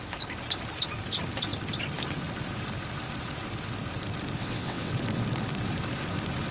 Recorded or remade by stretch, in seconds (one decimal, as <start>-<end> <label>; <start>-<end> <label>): 0.0-4.4 recorded; 4.4-4.9 remade; 4.9-6.5 recorded